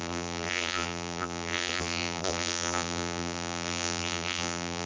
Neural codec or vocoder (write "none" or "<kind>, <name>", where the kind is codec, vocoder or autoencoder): vocoder, BigVGAN v2